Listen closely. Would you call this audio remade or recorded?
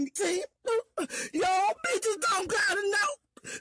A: recorded